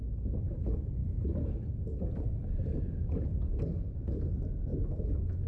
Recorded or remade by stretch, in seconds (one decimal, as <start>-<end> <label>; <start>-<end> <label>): 0.0-5.5 recorded